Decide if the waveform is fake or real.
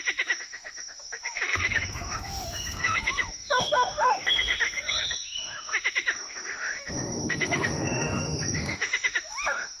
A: fake